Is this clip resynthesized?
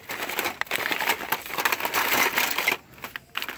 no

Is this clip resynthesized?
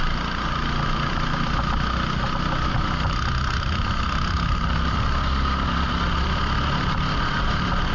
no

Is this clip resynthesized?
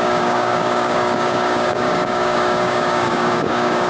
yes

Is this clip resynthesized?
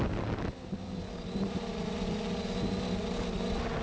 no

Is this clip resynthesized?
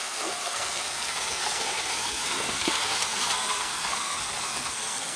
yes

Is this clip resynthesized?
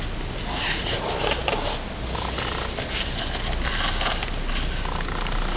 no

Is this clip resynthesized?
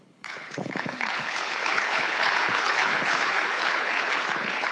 yes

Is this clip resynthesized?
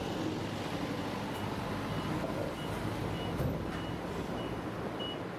no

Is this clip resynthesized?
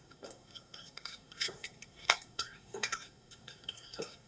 yes